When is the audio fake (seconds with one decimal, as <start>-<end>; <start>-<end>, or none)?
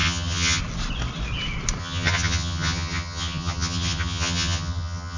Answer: 0.0-0.6; 1.8-5.2